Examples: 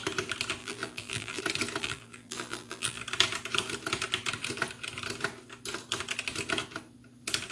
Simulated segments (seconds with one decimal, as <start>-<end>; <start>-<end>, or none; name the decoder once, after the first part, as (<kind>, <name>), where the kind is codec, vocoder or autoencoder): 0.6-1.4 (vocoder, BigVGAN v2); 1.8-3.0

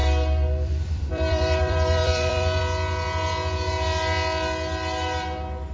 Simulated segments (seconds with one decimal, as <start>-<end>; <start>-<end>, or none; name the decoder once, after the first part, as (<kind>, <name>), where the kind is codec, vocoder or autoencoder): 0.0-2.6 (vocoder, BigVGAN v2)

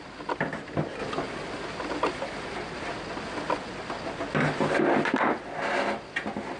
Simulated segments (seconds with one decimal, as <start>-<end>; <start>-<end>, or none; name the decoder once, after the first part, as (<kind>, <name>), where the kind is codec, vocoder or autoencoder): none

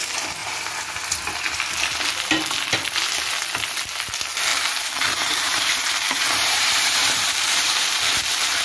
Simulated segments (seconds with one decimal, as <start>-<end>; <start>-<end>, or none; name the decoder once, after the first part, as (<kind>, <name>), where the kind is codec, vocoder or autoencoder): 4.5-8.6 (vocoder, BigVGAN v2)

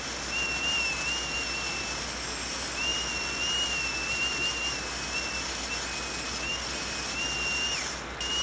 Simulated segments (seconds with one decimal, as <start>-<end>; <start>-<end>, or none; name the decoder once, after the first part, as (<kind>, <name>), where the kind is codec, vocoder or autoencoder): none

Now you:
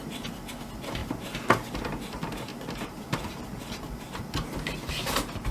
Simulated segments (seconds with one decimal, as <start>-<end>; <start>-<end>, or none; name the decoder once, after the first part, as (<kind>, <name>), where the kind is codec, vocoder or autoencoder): 1.0-1.8 (vocoder, BigVGAN v2); 2.5-3.8